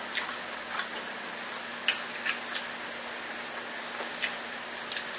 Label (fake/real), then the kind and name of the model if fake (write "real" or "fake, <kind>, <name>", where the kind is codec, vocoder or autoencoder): real